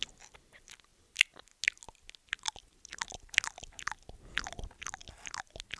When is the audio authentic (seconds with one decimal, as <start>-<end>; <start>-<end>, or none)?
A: 0.0-5.8